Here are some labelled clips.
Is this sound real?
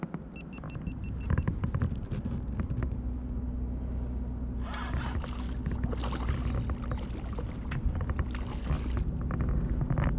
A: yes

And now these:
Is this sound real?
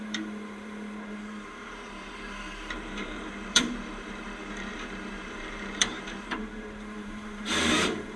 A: no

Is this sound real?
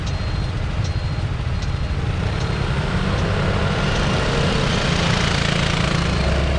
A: yes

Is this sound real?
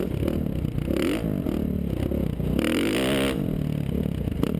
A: yes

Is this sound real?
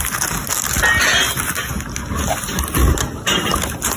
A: yes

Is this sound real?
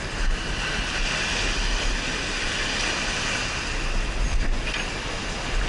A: yes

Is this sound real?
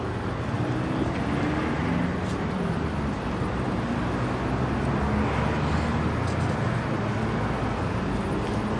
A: yes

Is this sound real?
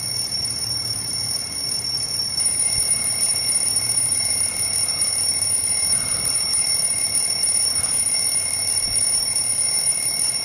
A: no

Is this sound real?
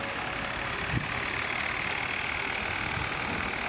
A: yes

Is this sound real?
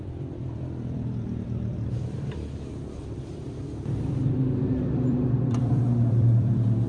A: no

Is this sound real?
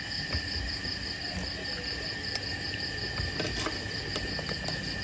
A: yes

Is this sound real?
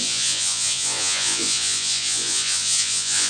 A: no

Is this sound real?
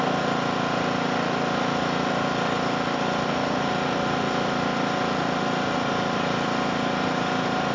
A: yes